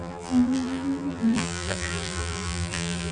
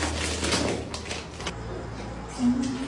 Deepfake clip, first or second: first